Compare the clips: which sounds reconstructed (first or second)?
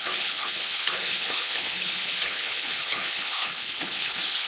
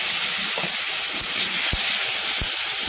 first